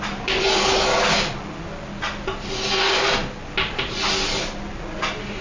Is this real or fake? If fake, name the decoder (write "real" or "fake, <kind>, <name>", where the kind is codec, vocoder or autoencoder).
real